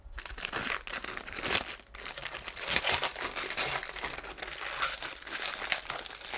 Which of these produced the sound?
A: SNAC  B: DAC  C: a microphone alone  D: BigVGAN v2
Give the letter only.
C